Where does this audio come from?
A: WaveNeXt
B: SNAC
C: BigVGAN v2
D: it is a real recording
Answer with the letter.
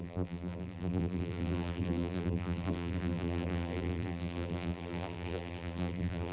C